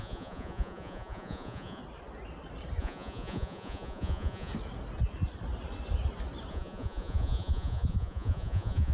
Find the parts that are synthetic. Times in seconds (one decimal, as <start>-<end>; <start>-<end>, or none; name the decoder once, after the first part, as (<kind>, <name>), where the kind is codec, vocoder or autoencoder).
0.0-1.8 (vocoder, Vocos); 2.8-4.5; 6.5-8.9